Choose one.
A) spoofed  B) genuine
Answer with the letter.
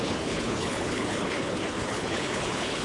A